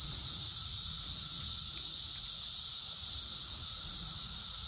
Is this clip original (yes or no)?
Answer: no